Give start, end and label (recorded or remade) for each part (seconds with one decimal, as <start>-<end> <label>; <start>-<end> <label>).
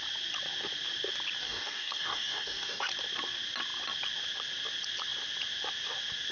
0.0-1.4 recorded; 1.4-2.8 remade; 2.8-6.3 recorded